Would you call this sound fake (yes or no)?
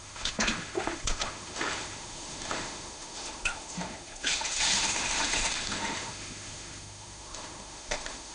yes